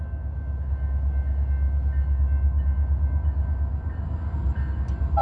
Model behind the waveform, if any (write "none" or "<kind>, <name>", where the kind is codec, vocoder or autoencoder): none